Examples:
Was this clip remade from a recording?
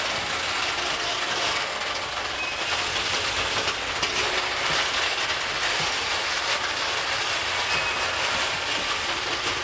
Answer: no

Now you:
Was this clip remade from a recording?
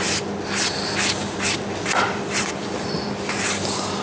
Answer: yes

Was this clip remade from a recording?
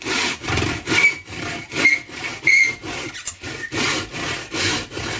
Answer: no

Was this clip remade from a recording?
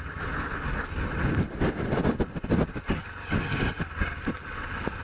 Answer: no